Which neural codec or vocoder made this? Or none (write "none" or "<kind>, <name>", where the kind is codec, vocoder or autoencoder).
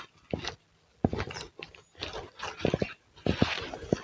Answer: none